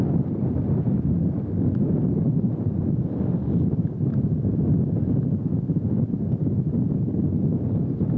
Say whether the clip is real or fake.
real